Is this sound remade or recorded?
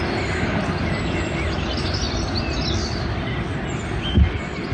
recorded